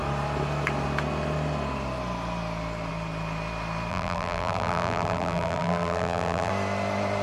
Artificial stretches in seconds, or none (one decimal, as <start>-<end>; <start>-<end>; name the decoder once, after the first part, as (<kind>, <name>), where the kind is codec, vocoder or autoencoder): 3.9-6.5 (vocoder, BigVGAN v2)